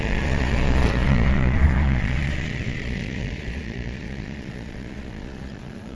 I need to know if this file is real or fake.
fake